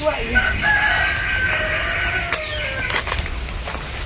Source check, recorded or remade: recorded